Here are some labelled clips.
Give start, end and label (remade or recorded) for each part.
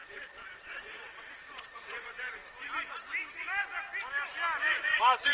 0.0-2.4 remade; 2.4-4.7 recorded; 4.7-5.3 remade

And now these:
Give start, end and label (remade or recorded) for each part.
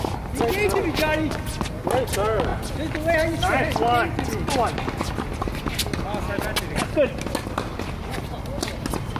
0.0-9.2 recorded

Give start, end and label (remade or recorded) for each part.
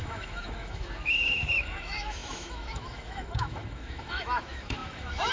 0.0-5.3 remade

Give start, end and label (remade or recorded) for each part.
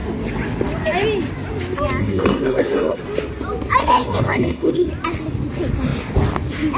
0.0-2.0 recorded; 2.0-3.0 remade; 3.0-3.8 recorded; 3.8-4.9 remade; 4.9-6.8 recorded